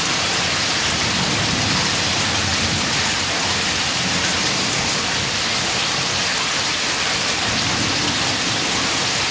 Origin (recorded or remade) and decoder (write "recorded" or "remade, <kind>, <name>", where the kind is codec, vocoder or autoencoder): recorded